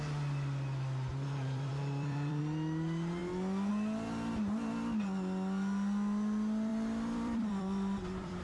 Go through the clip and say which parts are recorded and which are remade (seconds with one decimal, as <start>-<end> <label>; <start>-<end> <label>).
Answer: 0.0-1.1 recorded; 1.1-2.4 remade; 2.4-6.7 recorded; 6.7-8.4 remade